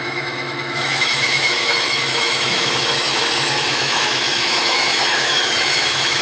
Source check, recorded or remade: remade